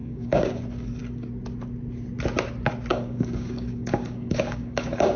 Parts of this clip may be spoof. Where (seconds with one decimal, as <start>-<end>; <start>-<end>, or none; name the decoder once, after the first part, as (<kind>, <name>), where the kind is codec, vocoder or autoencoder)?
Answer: 0.0-0.6 (codec, DAC); 2.9-5.2